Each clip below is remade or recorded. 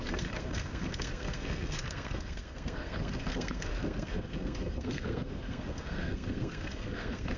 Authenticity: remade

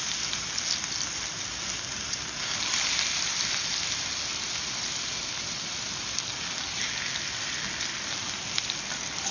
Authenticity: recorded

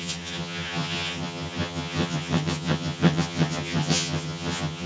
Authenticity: remade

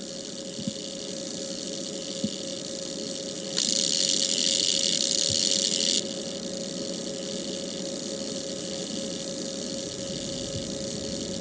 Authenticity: recorded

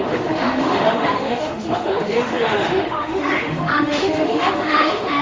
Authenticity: remade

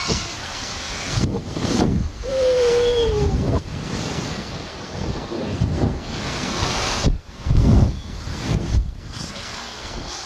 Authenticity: remade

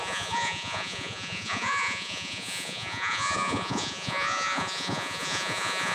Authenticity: remade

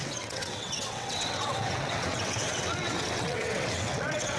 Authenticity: remade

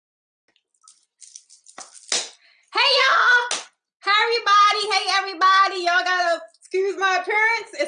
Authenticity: recorded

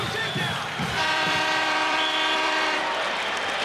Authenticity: remade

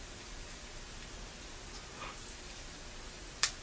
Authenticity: recorded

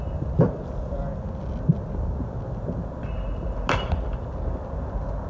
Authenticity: recorded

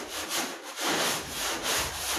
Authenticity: remade